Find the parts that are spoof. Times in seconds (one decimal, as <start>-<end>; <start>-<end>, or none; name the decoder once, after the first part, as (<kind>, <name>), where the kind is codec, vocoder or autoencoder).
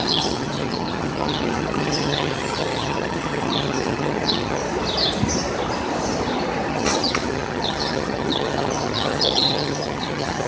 0.0-4.6 (vocoder, HiFi-GAN); 6.7-10.5